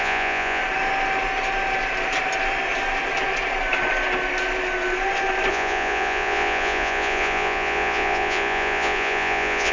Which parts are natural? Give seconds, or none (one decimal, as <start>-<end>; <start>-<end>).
0.6-5.5